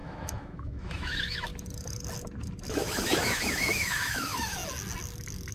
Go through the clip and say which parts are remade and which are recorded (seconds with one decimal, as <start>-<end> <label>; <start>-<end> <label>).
0.0-1.5 remade; 1.5-2.7 recorded; 2.7-4.6 remade; 4.6-5.5 recorded